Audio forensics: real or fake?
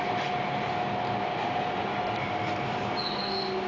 real